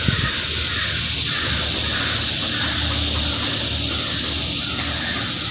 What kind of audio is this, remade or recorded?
recorded